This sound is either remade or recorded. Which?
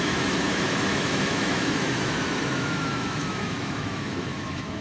remade